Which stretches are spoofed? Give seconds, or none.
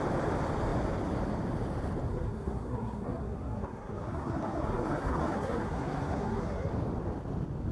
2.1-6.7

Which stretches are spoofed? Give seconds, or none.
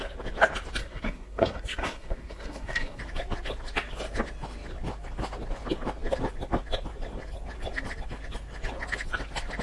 0.8-3.0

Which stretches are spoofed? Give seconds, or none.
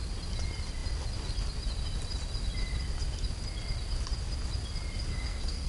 5.1-5.7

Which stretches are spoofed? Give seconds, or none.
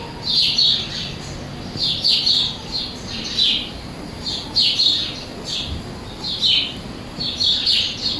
none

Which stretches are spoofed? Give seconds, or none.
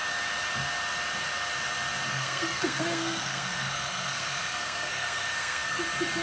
2.1-5.8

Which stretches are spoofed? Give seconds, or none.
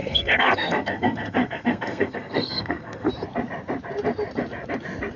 0.0-3.1